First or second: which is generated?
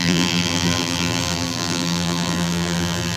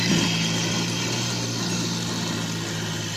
first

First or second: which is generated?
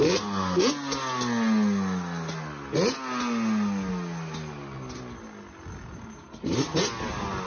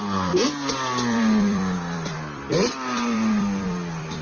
second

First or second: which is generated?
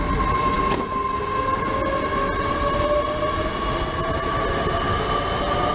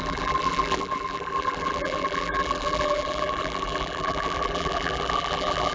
second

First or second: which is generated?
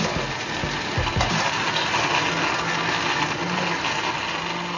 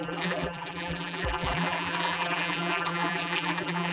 second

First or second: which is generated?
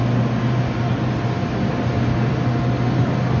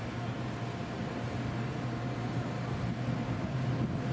second